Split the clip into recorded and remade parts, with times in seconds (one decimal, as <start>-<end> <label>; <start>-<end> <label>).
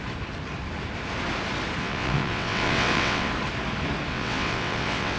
0.0-1.8 recorded; 1.8-3.3 remade; 3.3-4.1 recorded; 4.1-5.2 remade